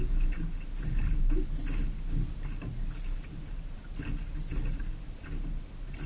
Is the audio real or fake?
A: real